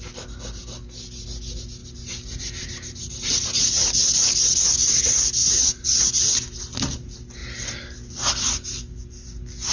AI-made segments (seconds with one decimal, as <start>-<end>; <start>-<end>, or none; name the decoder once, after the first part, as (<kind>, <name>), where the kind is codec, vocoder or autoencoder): 1.8-3.3 (vocoder, BigVGAN v2); 5.4-6.0